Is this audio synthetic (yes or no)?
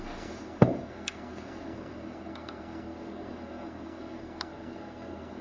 yes